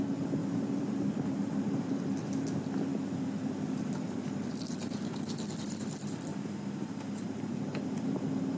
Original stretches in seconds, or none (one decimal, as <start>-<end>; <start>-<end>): 0.0-0.4; 1.9-6.3; 7.4-8.6